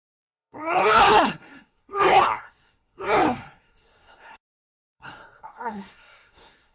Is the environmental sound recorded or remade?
remade